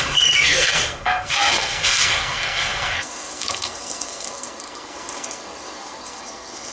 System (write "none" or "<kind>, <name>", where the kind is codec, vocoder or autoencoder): codec, SNAC